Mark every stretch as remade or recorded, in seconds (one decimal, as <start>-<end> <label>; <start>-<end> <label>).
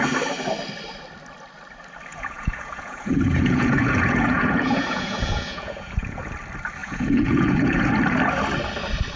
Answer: 0.0-2.1 recorded; 2.1-6.3 remade; 6.3-6.8 recorded; 6.8-7.9 remade; 7.9-9.2 recorded